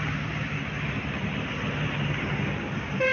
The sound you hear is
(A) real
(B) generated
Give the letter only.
A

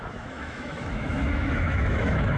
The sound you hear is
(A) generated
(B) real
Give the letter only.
A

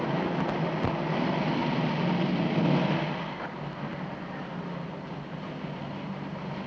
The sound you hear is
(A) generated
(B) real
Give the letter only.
B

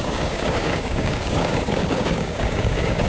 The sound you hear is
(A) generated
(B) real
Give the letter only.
A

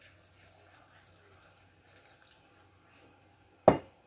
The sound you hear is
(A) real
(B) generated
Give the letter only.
A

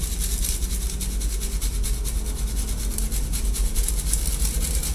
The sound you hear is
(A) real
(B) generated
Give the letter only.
A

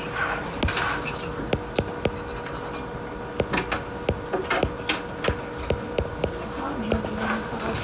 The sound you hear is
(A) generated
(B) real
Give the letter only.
B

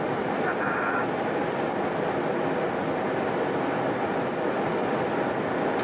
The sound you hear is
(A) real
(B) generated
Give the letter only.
A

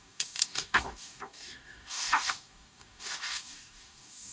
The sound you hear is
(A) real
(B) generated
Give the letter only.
B